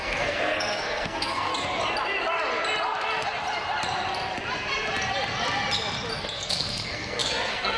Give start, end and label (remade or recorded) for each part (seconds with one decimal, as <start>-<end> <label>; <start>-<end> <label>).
0.0-1.5 remade; 1.5-6.2 recorded; 6.2-7.8 remade